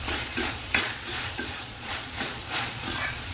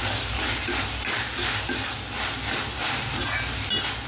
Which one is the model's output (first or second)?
first